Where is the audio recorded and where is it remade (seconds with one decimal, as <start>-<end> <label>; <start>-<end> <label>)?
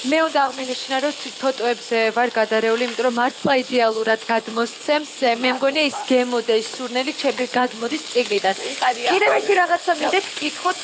0.0-0.8 remade; 0.8-3.1 recorded; 3.1-6.0 remade; 6.0-7.4 recorded; 7.4-10.8 remade